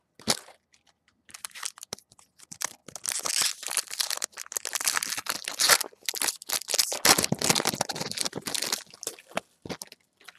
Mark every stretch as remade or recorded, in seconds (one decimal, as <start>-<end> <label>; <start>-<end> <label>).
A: 0.0-10.4 recorded